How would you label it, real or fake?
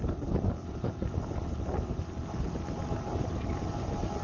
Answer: real